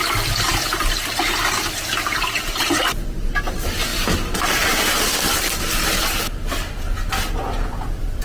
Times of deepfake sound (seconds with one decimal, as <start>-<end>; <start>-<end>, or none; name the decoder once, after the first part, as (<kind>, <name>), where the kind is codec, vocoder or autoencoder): none

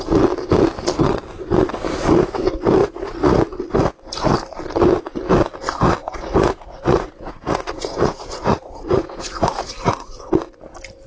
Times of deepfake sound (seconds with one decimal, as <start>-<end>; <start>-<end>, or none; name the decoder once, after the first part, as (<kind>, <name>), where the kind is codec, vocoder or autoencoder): 2.8-3.4 (vocoder, Vocos); 6.0-10.3

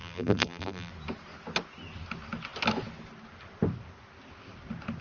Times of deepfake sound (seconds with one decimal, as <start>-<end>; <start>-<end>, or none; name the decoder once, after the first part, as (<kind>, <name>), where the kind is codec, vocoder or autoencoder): 0.0-0.9 (vocoder, BigVGAN v2)

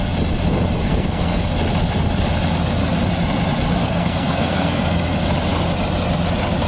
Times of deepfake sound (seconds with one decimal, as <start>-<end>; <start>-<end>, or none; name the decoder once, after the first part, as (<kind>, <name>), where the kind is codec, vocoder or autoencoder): 0.8-1.4 (codec, SNAC); 3.8-4.8

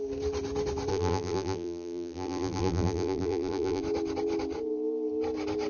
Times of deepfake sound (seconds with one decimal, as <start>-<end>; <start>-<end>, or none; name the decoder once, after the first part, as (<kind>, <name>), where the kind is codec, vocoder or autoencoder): 0.9-3.8 (vocoder, BigVGAN v2)

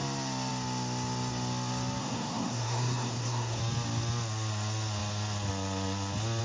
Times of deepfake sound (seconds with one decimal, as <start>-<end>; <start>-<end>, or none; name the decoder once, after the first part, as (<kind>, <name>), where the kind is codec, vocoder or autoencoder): 2.0-3.6 (codec, SNAC)

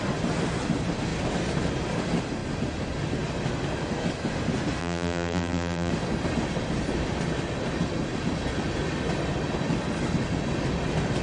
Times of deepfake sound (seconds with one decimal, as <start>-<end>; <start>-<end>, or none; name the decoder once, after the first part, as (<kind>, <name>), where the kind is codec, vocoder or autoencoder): 4.8-5.9 (vocoder, BigVGAN v2)

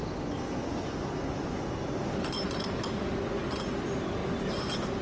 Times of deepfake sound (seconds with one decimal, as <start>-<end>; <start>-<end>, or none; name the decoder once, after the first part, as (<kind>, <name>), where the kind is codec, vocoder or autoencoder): none